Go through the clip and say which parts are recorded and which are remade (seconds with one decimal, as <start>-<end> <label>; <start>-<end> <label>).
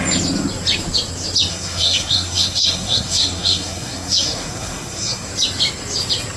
0.0-1.5 recorded; 1.5-5.3 remade; 5.3-6.4 recorded